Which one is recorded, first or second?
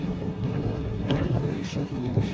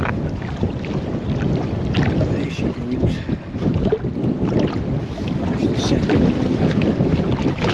second